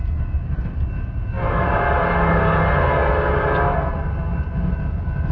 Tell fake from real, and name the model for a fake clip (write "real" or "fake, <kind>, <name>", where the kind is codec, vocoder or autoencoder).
real